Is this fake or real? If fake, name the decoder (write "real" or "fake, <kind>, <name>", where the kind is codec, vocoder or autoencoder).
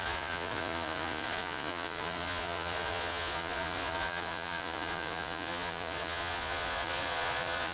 fake, vocoder, Vocos